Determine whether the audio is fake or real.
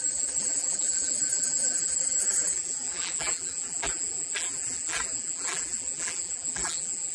fake